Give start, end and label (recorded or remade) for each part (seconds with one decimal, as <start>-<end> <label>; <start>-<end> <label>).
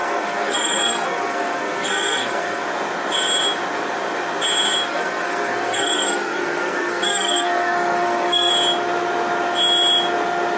0.0-2.6 remade; 2.6-4.9 recorded; 4.9-8.5 remade; 8.5-10.6 recorded